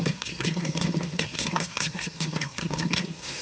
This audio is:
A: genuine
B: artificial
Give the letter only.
B